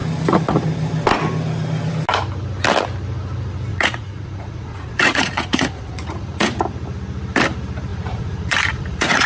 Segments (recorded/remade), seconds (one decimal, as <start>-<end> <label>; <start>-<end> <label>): 0.0-3.7 recorded; 3.7-6.6 remade; 6.6-7.9 recorded; 7.9-9.3 remade